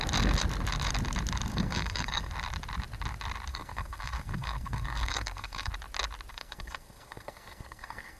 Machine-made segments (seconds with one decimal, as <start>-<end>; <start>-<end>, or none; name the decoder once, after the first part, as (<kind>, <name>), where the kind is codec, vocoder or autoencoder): 1.5-2.3 (codec, SNAC); 3.5-5.7; 6.3-8.2